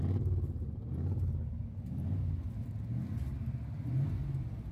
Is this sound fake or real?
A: real